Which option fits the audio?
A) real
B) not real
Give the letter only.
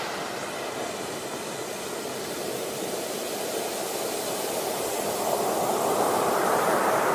A